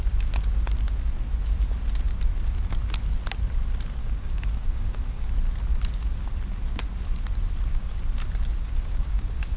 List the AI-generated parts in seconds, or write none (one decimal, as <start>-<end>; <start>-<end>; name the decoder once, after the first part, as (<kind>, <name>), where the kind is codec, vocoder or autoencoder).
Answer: 4.0-5.3 (codec, DAC); 8.6-9.6